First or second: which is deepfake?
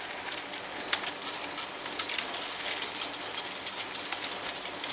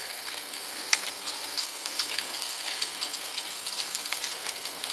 second